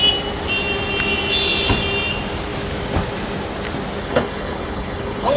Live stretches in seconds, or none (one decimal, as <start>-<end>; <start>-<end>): 0.0-4.0